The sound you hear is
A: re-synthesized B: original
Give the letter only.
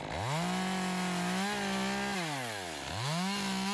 B